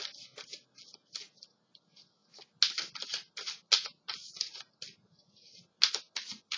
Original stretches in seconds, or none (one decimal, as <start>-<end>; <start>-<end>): 0.0-6.6